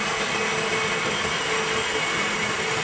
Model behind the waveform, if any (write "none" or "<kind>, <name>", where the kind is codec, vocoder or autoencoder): none